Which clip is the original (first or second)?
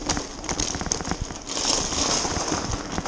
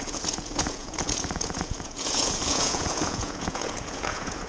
first